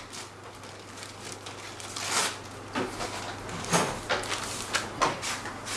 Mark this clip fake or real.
real